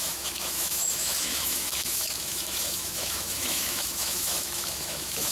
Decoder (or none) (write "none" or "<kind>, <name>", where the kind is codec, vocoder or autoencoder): autoencoder, DAC-VAE